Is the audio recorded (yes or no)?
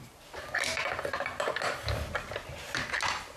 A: yes